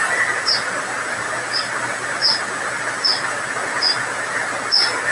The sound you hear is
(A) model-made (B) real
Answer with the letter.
B